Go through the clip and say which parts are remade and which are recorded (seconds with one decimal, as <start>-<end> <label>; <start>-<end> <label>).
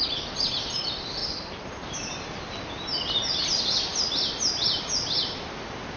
0.0-6.0 recorded